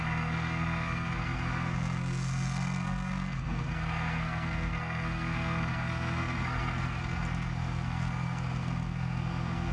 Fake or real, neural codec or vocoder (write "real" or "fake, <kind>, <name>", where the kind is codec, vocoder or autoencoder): fake, codec, SNAC